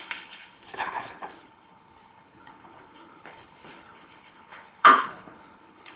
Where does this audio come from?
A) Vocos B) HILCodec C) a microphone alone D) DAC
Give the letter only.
B